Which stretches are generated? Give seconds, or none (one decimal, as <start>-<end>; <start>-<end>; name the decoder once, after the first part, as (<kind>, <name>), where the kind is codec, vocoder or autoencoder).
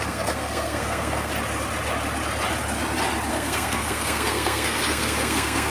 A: 0.0-1.3 (codec, SNAC); 3.3-5.7